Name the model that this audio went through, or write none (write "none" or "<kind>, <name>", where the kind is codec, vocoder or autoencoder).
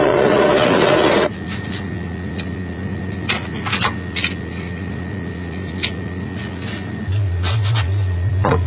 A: vocoder, Vocos